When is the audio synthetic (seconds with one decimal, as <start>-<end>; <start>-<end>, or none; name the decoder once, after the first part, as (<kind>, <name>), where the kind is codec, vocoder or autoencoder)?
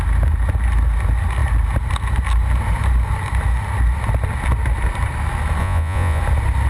5.6-6.2 (vocoder, Vocos)